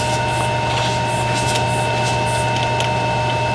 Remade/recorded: recorded